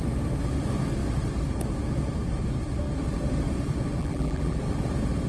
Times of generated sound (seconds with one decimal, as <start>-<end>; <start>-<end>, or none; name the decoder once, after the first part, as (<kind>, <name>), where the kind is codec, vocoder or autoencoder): 4.0-4.6 (vocoder, BigVGAN v2)